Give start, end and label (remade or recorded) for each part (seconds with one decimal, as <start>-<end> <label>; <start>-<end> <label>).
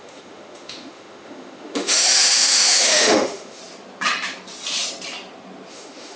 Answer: 0.0-3.6 remade; 3.6-5.7 recorded; 5.7-6.2 remade